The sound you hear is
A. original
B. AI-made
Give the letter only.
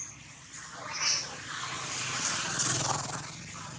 A